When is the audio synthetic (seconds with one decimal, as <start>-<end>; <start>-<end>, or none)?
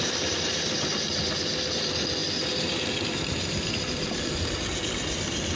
none